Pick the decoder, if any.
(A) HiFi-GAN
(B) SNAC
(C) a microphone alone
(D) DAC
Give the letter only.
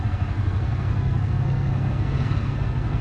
B